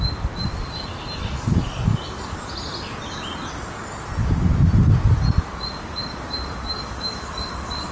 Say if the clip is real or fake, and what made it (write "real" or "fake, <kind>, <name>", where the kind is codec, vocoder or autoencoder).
real